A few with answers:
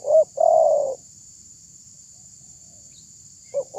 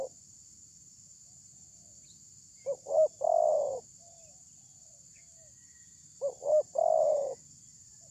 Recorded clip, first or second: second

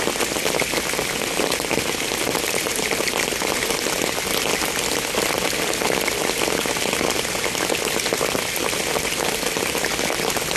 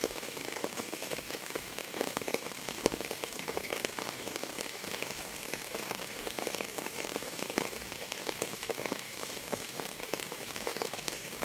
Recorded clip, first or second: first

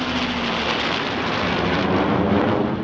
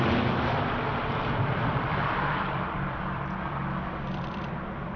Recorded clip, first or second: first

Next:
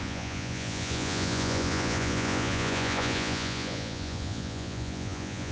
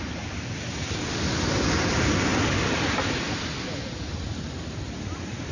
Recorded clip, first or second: second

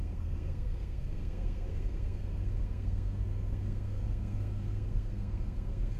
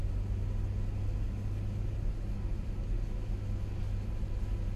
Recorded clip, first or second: second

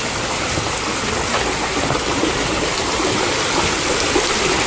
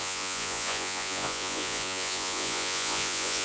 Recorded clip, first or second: first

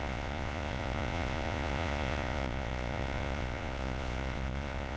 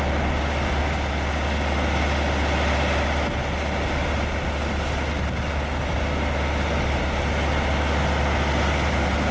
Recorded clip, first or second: second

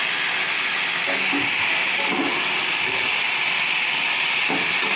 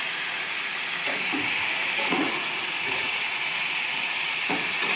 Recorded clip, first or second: first